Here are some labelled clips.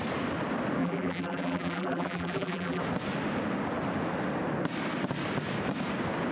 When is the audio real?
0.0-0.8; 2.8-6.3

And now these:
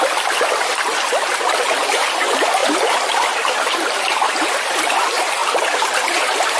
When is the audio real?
0.0-2.6; 5.0-6.6

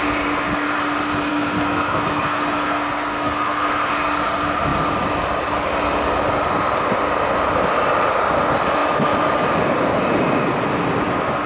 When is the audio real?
0.0-1.3; 3.9-11.5

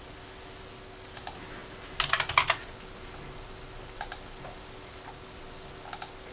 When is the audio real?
0.0-6.3

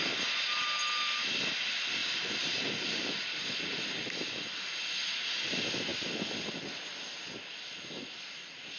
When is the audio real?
0.0-2.0; 4.6-5.9; 7.3-8.8

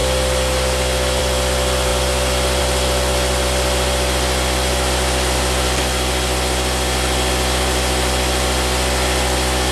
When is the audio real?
0.0-9.7

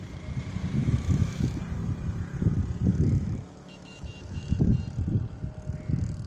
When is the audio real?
0.0-0.8; 1.6-2.9; 4.7-6.3